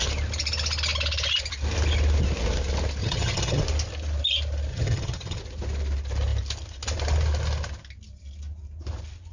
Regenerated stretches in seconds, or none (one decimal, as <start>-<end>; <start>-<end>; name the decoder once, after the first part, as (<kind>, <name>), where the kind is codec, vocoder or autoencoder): 3.0-3.6 (vocoder, HiFi-GAN); 4.7-5.4